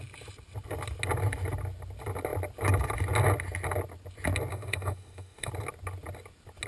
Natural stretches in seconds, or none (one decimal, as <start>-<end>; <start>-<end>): 0.0-4.5; 5.5-6.7